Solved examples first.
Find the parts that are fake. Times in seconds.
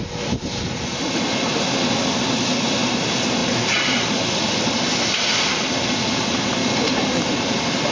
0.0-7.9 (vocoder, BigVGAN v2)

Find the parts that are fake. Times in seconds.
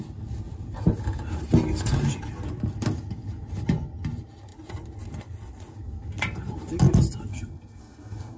7.3-8.4 (codec, SNAC)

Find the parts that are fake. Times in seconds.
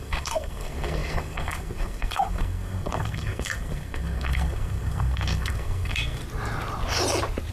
0.0-6.2 (codec, SNAC)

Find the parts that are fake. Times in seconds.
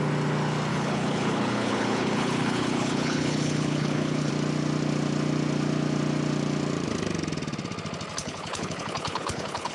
0.7-4.3 (codec, HILCodec); 8.2-9.7